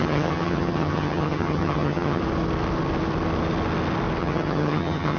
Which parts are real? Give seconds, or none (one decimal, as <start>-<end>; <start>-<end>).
2.2-4.2